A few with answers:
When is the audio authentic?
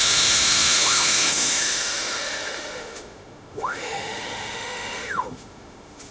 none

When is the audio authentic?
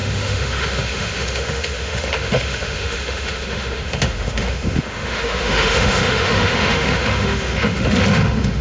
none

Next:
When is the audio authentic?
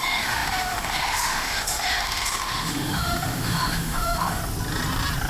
4.4-5.3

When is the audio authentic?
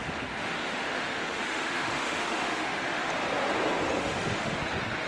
3.1-4.0; 4.6-5.1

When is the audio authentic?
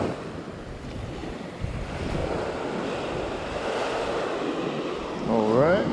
0.0-5.9